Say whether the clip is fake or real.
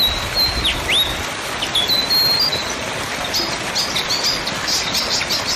real